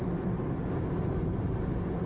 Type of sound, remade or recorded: recorded